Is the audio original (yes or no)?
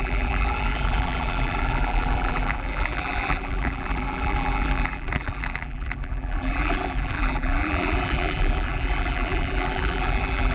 no